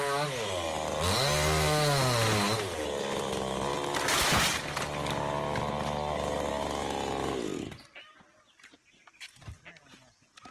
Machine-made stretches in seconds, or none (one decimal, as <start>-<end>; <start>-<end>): none